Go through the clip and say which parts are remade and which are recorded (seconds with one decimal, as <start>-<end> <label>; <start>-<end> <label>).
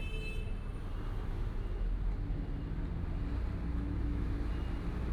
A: 0.0-3.7 recorded; 3.7-4.5 remade; 4.5-5.1 recorded